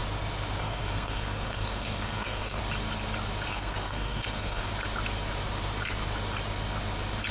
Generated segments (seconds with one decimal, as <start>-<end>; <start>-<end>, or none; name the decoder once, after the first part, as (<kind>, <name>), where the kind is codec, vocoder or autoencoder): 0.6-2.6 (codec, SNAC); 3.5-4.7